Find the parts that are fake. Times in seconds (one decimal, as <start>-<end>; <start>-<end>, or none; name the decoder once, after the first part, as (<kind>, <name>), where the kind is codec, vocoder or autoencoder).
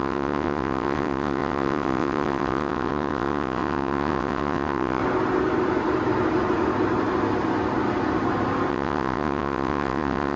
0.0-5.0 (vocoder, WaveNeXt); 8.7-10.4